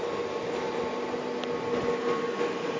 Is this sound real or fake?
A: real